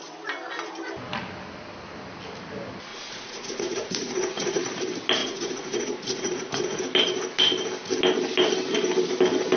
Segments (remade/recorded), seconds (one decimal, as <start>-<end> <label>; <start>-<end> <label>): 0.0-2.9 recorded; 2.9-4.6 remade; 4.6-5.2 recorded; 5.2-6.8 remade; 6.8-9.6 recorded